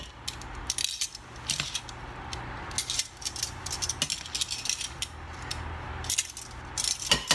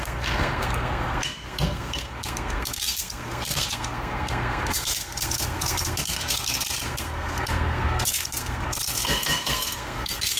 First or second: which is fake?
second